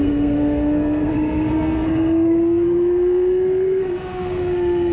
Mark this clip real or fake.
fake